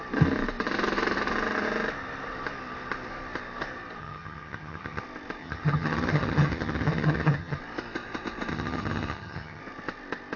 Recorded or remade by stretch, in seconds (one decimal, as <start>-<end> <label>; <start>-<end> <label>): 0.0-4.0 recorded; 4.0-5.0 remade; 5.0-5.4 recorded; 5.4-7.6 remade; 7.6-8.5 recorded; 8.5-9.6 remade; 9.6-10.4 recorded